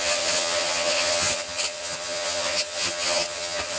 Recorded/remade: remade